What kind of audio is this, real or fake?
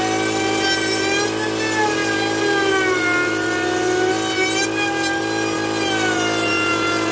real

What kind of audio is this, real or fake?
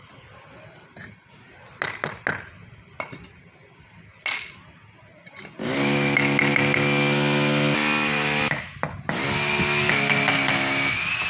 real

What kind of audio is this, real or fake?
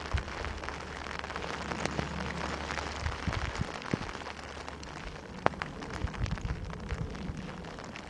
real